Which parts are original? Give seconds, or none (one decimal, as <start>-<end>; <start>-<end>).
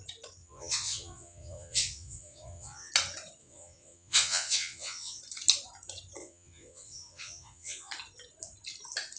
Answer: 0.0-0.4; 2.9-3.4; 5.2-6.2; 7.9-9.2